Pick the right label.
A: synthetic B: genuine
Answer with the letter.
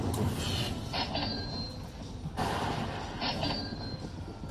B